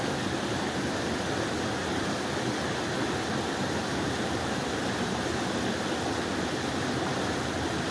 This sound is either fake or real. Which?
real